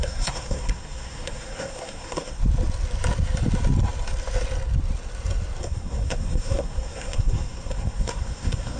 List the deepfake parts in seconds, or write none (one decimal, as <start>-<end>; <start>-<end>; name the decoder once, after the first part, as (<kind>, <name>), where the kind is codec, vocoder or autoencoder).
0.0-2.4 (codec, SNAC); 5.6-8.8